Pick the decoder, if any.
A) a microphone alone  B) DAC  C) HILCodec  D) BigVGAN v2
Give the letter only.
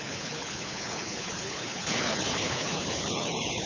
C